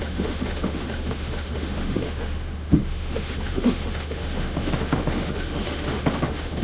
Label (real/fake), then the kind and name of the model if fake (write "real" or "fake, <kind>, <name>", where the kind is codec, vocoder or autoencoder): fake, autoencoder, DAC-VAE